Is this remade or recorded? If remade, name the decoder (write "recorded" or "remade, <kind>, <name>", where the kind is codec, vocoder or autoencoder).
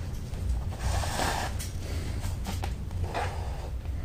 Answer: recorded